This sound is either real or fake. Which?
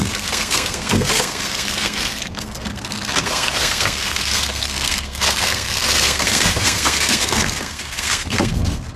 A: fake